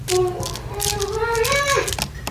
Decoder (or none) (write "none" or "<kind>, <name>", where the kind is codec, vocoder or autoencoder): none